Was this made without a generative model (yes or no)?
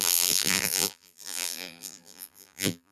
no